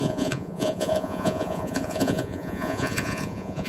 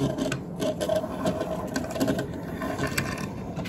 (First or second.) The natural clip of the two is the second